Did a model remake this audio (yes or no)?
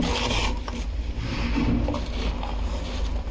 no